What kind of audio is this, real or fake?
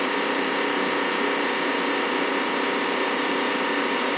real